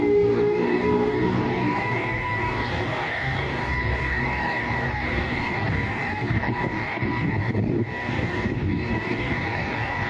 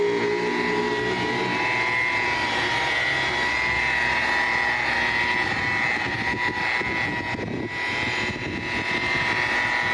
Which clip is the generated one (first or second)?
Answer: first